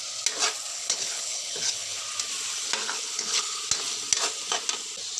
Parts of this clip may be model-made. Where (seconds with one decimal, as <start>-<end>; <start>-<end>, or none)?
0.7-2.0; 2.8-3.6